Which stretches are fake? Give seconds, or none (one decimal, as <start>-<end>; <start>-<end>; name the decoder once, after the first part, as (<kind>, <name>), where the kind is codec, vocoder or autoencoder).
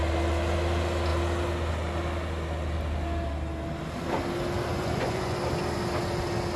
4.7-5.4 (vocoder, Vocos)